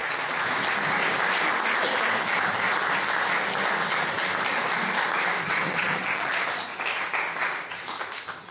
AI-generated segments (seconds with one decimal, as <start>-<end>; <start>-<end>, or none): 5.5-6.3